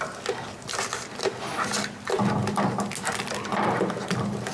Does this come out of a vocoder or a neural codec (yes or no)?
no